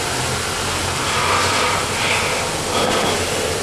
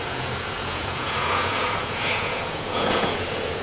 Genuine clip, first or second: first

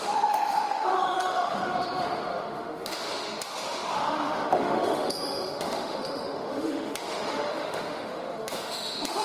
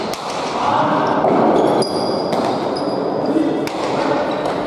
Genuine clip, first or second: second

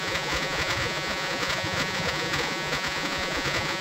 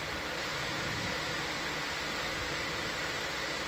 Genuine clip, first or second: second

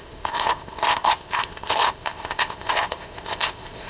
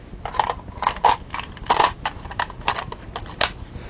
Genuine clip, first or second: second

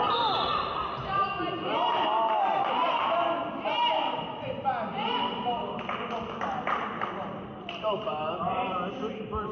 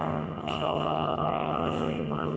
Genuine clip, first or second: first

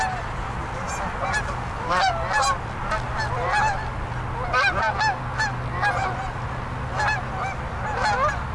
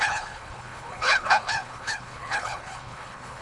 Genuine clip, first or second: first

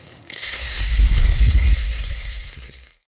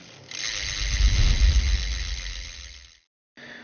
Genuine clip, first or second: second